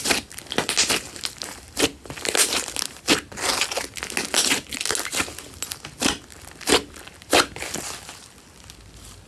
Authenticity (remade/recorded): recorded